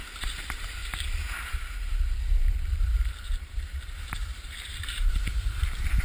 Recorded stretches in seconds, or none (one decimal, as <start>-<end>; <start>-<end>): 0.0-2.4